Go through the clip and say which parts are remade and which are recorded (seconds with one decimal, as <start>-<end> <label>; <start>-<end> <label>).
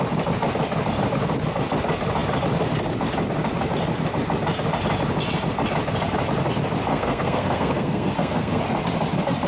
0.0-6.9 recorded; 6.9-8.6 remade; 8.6-9.5 recorded